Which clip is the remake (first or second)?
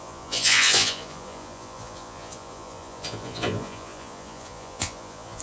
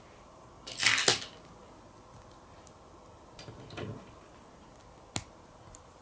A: first